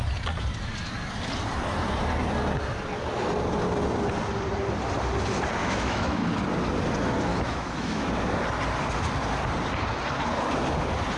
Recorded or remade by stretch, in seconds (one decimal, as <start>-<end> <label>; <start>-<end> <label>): 0.0-5.6 recorded; 5.6-6.3 remade; 6.3-7.3 recorded; 7.3-8.1 remade; 8.1-11.2 recorded